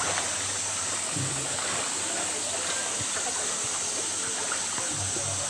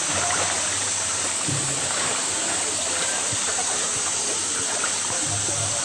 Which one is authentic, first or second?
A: first